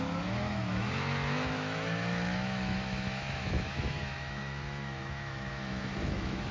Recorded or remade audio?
remade